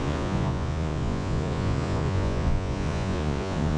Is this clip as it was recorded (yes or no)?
no